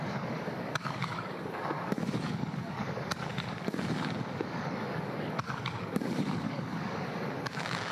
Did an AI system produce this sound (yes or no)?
yes